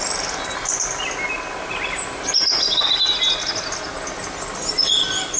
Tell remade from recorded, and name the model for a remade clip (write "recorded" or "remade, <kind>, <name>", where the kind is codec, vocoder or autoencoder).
recorded